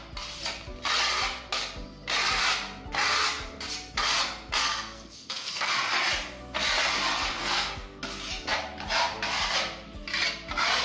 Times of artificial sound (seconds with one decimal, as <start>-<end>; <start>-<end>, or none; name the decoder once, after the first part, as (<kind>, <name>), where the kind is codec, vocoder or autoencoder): 4.6-5.7 (codec, SNAC); 7.4-8.0

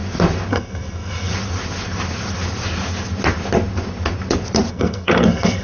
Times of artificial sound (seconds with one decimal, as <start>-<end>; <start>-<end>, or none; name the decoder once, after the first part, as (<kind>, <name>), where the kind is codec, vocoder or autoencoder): 0.5-1.3 (codec, SNAC); 4.7-5.6

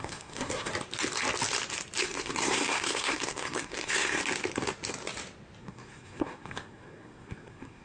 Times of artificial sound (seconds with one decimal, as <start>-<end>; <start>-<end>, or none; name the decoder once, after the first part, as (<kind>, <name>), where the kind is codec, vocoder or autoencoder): 0.0-0.7 (codec, SNAC); 2.0-4.2; 5.6-7.8